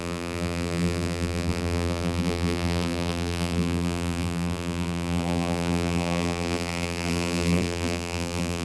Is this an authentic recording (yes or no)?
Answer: no